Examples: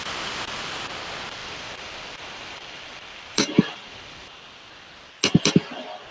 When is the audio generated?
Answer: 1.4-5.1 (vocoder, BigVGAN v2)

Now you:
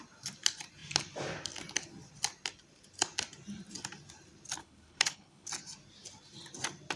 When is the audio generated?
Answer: 4.6-5.5 (codec, HILCodec)